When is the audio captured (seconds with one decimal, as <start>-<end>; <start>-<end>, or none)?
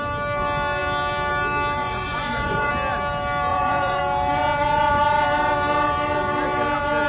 0.0-1.8; 2.7-3.5; 4.0-7.1